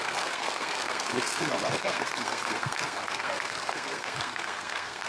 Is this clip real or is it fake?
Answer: fake